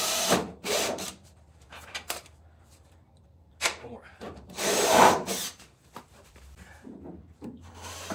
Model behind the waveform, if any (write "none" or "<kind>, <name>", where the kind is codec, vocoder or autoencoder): vocoder, BigVGAN v2